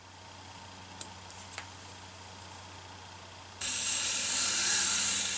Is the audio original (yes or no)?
yes